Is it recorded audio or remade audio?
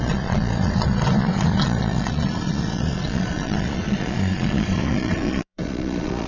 remade